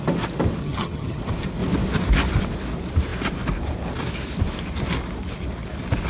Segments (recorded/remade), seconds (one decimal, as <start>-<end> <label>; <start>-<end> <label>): 0.0-0.6 recorded; 0.6-1.2 remade; 1.2-6.1 recorded